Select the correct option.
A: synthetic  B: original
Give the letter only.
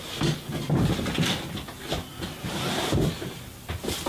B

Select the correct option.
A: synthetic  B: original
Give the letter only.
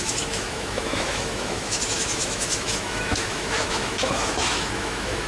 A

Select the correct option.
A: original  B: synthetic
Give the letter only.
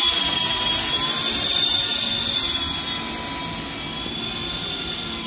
A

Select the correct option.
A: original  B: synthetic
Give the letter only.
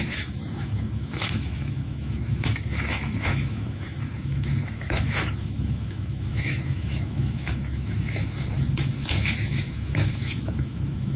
B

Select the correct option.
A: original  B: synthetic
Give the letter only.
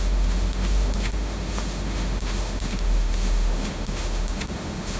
B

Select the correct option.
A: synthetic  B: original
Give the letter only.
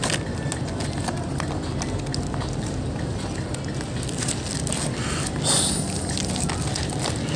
B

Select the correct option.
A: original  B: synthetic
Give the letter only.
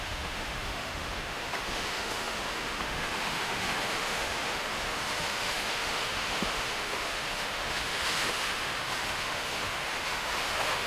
B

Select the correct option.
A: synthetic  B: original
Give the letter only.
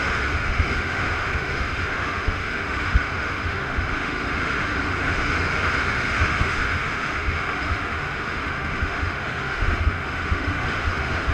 A